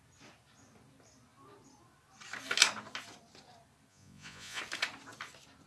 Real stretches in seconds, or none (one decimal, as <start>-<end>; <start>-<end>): 0.0-3.9; 4.6-5.7